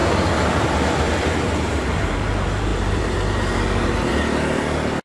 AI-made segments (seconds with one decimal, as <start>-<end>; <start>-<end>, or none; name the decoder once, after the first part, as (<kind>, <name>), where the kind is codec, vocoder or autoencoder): 0.0-2.0 (vocoder, BigVGAN v2); 2.7-4.1